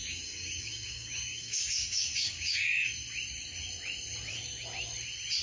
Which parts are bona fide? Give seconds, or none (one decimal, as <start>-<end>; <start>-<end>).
2.7-5.4